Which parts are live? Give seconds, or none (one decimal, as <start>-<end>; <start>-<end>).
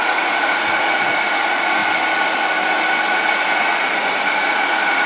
1.8-3.1